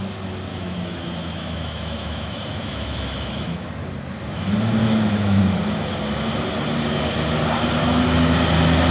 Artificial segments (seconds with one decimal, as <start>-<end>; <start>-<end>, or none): 0.5-3.7; 4.8-5.4